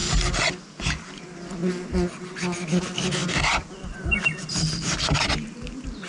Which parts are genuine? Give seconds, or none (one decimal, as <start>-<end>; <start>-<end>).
0.0-1.0; 1.6-2.8